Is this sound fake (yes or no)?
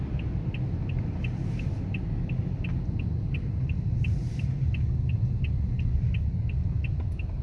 no